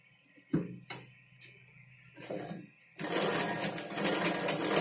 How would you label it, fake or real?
real